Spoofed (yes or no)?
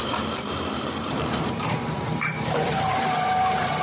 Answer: yes